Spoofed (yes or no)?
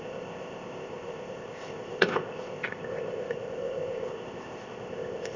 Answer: yes